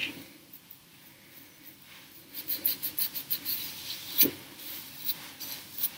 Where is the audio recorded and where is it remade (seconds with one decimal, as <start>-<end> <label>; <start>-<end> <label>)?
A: 0.0-6.0 recorded